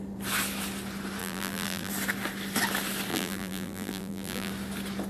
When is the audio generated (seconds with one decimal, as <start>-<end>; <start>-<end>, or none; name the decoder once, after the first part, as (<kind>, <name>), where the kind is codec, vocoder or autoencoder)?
1.2-1.9 (vocoder, BigVGAN v2); 3.1-4.5